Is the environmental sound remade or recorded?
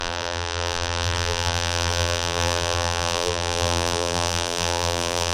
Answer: remade